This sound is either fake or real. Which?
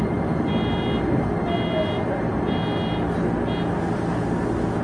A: real